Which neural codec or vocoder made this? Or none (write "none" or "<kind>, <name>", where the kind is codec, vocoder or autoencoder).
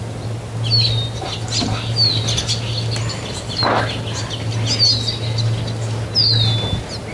none